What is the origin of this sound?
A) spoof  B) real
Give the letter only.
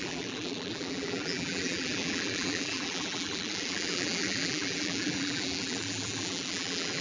A